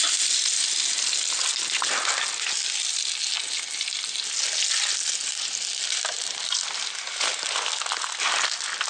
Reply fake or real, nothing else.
real